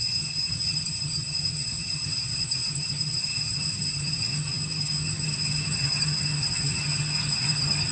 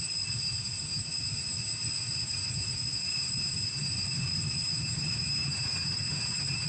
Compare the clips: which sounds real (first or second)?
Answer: second